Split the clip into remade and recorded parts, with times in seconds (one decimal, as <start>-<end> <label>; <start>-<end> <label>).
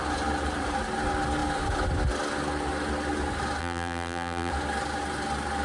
0.0-3.6 recorded; 3.6-4.5 remade; 4.5-5.6 recorded